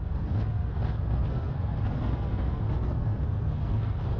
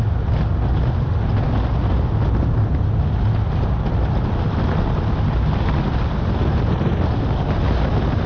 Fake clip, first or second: first